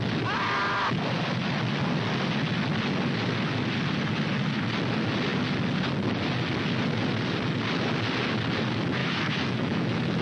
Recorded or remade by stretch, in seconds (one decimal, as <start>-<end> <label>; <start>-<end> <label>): 0.0-9.0 recorded; 9.0-10.2 remade